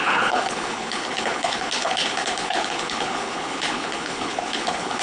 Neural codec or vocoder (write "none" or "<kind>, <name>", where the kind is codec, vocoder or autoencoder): codec, HILCodec